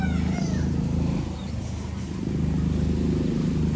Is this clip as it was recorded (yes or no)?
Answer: yes